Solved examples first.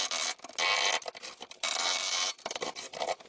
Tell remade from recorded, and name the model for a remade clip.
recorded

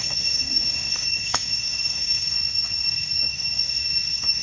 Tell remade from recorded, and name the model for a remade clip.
remade, autoencoder, DAC-VAE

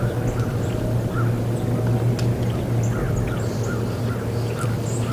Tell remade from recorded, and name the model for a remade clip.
recorded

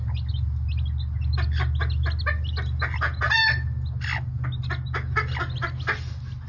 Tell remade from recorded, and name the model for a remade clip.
recorded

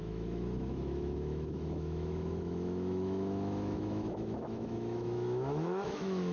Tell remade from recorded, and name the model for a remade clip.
remade, autoencoder, DAC-VAE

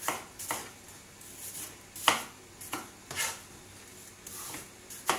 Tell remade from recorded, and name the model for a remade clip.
recorded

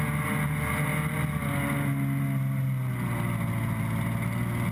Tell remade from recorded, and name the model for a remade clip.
recorded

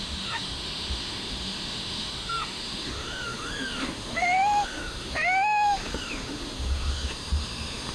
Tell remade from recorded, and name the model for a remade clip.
remade, autoencoder, DAC-VAE